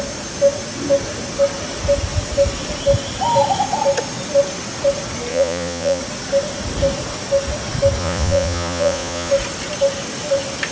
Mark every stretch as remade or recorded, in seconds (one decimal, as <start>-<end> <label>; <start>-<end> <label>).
0.0-5.3 recorded; 5.3-6.0 remade; 6.0-8.0 recorded; 8.0-9.3 remade; 9.3-10.7 recorded